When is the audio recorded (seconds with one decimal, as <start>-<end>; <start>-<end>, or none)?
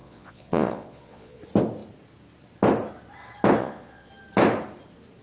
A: 1.4-3.6; 4.1-5.2